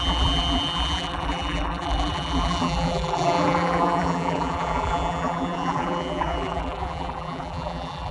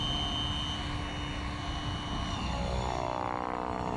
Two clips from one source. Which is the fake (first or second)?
first